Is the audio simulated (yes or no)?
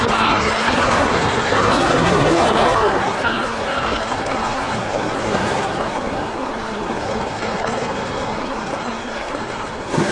yes